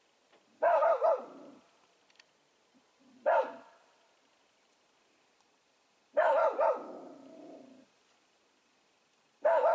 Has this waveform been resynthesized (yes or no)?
no